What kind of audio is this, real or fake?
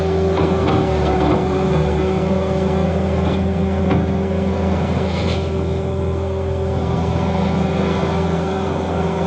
fake